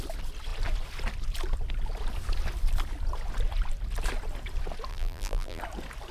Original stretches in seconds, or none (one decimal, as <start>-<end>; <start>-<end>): 0.0-4.9; 5.6-6.1